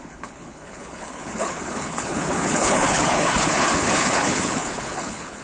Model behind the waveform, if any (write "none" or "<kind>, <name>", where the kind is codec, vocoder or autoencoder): codec, HILCodec